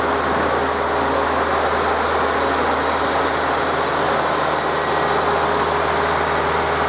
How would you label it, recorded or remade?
recorded